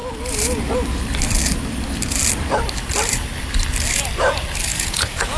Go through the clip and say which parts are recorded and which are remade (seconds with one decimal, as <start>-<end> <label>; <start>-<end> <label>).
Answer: 0.0-4.7 recorded; 4.7-5.4 remade